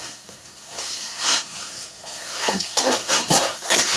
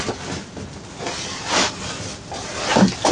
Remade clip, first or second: first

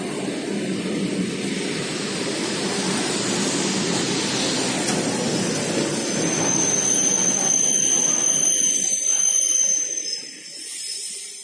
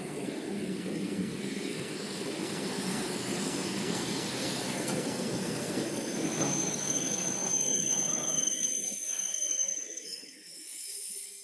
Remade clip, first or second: second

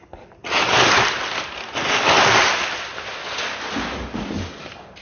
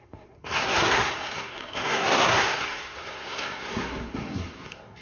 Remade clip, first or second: second